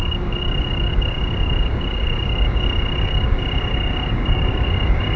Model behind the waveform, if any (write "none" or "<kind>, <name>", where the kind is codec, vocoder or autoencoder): codec, DAC